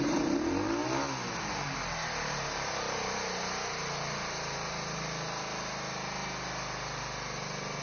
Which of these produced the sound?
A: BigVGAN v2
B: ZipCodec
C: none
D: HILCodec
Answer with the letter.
C